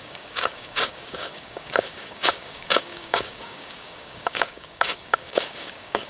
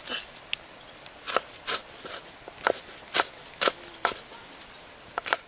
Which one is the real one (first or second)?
second